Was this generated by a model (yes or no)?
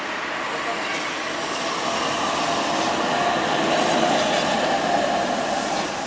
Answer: no